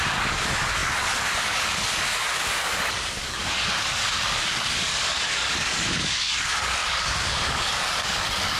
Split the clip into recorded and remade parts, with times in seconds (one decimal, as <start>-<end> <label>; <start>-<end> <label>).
0.0-8.6 remade